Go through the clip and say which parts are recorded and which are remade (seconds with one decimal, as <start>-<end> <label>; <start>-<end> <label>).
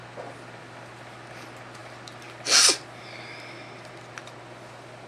0.0-5.1 recorded